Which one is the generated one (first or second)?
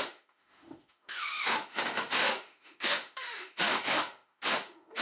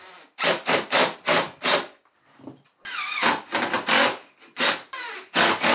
first